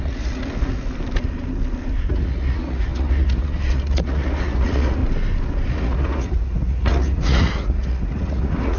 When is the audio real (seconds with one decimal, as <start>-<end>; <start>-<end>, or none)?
0.4-2.1; 5.0-5.7